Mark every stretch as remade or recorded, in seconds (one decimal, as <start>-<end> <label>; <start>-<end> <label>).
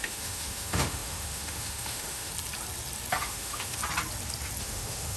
0.0-2.3 remade; 2.3-3.1 recorded; 3.1-3.8 remade; 3.8-4.6 recorded; 4.6-5.2 remade